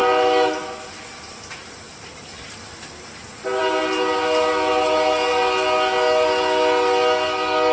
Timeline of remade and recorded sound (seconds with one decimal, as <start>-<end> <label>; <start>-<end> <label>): 0.0-7.7 recorded